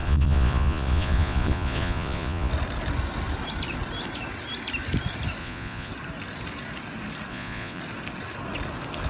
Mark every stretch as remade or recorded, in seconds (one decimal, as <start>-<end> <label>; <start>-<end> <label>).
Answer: 0.0-2.5 remade; 2.5-5.4 recorded; 5.4-5.9 remade; 5.9-7.3 recorded; 7.3-7.8 remade; 7.8-9.1 recorded

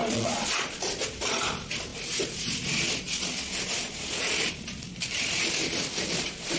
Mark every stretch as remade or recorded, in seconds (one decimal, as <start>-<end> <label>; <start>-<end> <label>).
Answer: 0.0-0.8 remade; 0.8-6.6 recorded

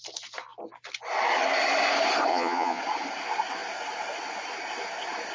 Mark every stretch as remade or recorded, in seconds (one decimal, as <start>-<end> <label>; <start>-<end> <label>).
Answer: 0.0-2.3 recorded; 2.3-2.8 remade; 2.8-5.3 recorded

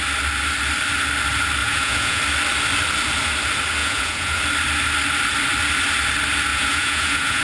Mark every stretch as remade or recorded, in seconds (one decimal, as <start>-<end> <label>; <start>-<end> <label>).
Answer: 0.0-1.6 recorded; 1.6-2.2 remade; 2.2-3.8 recorded; 3.8-4.4 remade; 4.4-6.5 recorded; 6.5-7.4 remade